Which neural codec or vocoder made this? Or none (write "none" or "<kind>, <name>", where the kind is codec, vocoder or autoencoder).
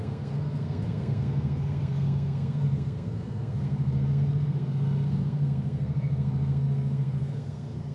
codec, SNAC